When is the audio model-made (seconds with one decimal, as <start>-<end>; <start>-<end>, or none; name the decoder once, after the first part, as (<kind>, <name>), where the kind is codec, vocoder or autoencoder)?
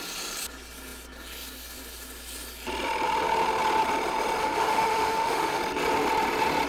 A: 4.4-5.6 (autoencoder, DAC-VAE)